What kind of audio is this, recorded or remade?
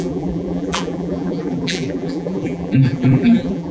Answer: remade